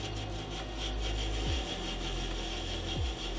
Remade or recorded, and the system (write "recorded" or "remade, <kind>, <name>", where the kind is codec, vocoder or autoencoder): recorded